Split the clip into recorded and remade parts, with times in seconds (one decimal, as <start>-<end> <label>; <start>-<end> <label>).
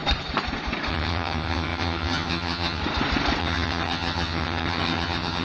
0.0-0.9 recorded; 0.9-2.8 remade; 2.8-3.4 recorded; 3.4-5.4 remade